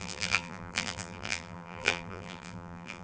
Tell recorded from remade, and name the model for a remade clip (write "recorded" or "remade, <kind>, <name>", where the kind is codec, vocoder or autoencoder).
remade, vocoder, BigVGAN v2